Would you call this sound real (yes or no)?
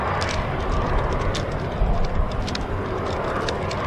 yes